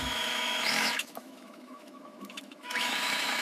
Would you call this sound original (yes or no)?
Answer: no